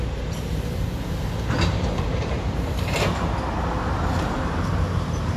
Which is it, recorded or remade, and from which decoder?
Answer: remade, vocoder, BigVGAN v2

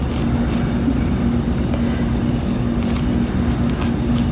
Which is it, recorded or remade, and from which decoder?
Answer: recorded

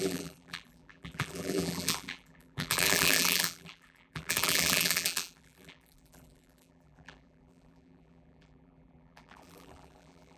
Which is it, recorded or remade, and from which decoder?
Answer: remade, vocoder, BigVGAN v2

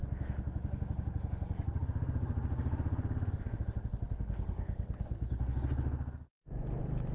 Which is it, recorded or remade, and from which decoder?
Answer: recorded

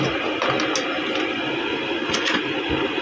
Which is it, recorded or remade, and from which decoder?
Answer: recorded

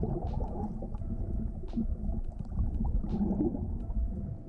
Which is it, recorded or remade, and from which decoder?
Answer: remade, vocoder, BigVGAN v2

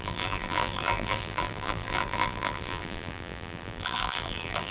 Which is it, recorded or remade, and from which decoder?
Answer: remade, vocoder, BigVGAN v2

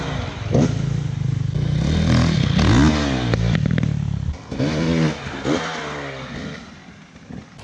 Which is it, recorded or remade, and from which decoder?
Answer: recorded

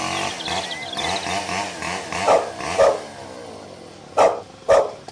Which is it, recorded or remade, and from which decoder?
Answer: recorded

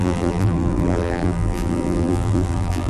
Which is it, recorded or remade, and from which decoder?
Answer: remade, vocoder, BigVGAN v2